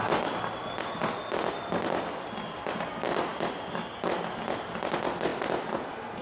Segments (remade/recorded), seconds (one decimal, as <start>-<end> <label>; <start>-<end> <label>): 0.0-6.2 recorded